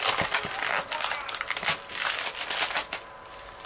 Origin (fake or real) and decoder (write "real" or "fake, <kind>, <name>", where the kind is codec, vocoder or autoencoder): real